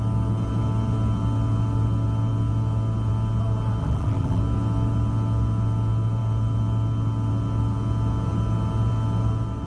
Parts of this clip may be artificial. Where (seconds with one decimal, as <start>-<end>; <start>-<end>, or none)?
3.8-4.4